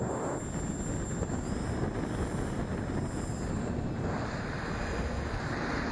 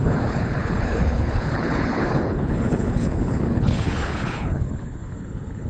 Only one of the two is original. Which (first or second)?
first